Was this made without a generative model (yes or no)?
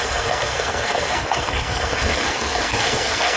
no